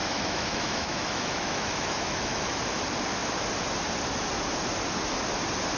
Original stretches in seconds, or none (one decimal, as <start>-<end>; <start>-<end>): 2.6-5.8